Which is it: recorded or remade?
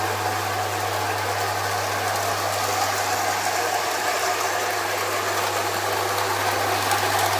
recorded